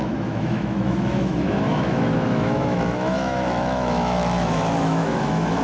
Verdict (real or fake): fake